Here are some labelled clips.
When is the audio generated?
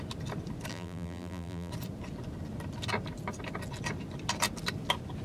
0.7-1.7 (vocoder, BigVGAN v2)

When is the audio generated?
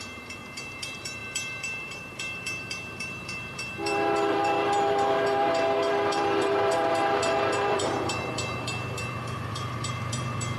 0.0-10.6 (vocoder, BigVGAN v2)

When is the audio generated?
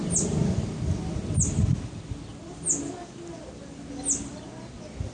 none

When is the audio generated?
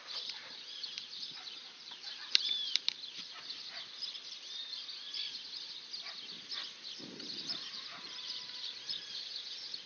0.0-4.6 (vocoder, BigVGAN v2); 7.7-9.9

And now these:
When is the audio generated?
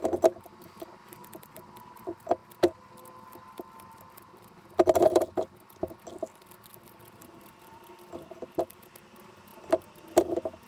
0.0-2.4 (vocoder, BigVGAN v2); 7.2-10.7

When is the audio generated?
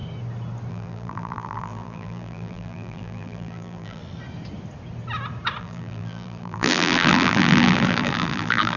0.7-4.0 (vocoder, BigVGAN v2); 5.6-8.8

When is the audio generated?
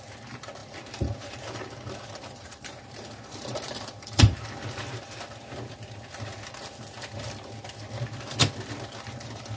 0.6-4.4 (vocoder, BigVGAN v2)